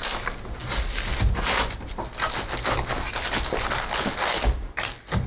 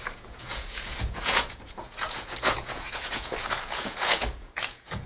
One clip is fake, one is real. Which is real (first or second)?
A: first